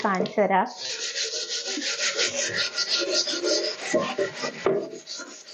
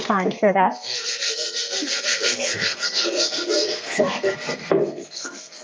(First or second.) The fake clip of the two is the second